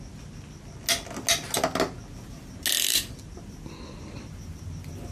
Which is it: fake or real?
real